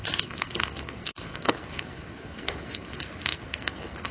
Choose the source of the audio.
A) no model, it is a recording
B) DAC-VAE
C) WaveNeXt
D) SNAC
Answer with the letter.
D